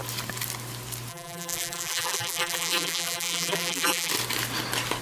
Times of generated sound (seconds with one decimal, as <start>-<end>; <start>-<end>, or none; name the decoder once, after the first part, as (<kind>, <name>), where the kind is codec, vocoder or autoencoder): 1.1-4.1 (vocoder, BigVGAN v2)